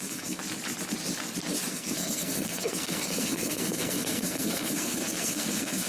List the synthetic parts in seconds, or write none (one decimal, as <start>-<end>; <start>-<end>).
0.0-0.4; 1.7-5.9